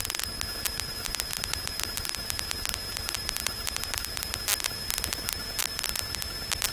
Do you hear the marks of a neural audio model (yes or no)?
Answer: yes